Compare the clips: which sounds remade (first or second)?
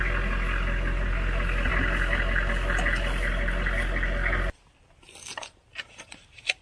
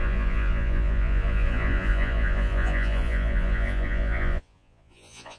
second